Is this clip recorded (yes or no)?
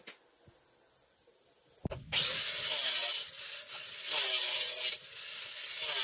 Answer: yes